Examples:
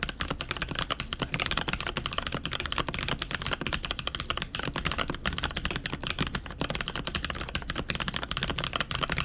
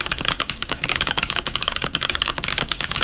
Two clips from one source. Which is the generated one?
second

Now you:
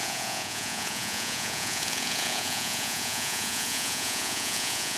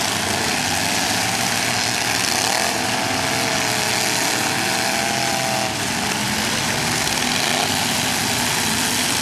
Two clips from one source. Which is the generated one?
first